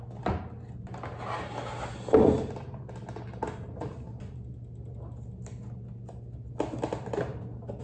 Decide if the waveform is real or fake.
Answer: real